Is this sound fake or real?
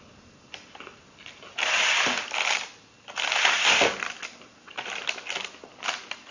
real